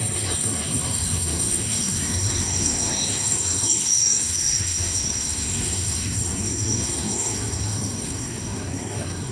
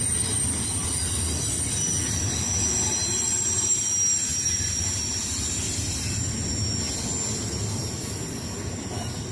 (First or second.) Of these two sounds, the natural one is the second